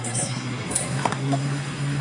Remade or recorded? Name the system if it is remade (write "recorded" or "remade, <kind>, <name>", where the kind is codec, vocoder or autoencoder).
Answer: remade, codec, SNAC